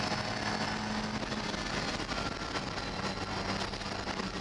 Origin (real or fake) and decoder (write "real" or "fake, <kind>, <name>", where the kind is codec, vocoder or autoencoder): real